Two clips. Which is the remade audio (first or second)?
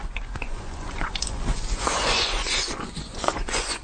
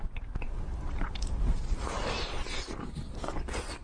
first